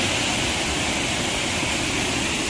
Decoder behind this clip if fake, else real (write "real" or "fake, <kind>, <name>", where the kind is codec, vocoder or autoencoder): real